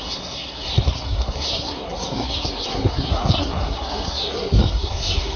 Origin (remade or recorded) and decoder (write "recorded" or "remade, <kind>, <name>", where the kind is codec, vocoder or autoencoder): remade, codec, SNAC